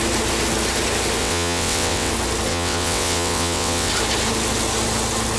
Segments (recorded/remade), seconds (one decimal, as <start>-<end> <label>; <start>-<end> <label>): 0.0-1.2 recorded; 1.2-2.1 remade; 2.1-2.5 recorded; 2.5-3.9 remade; 3.9-5.4 recorded